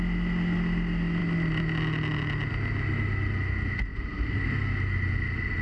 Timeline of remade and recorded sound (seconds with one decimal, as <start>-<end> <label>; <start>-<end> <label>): 0.0-3.9 recorded; 3.9-4.4 remade; 4.4-5.6 recorded